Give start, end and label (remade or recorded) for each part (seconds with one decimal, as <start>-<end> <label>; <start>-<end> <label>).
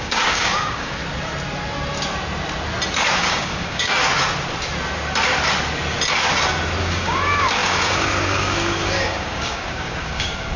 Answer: 0.0-1.0 remade; 1.0-3.2 recorded; 3.2-4.0 remade; 4.0-6.8 recorded; 6.8-10.6 remade